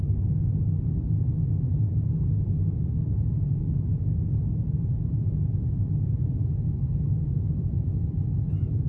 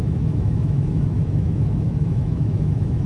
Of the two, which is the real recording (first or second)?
first